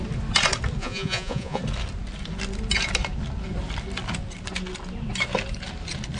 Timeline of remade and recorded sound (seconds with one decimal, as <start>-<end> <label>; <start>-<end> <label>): 0.0-0.8 recorded; 0.8-1.6 remade; 1.6-6.2 recorded